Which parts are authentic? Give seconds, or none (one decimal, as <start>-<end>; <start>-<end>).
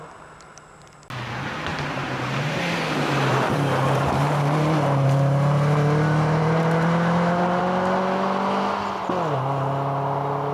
0.0-1.7; 2.6-3.3; 7.6-10.5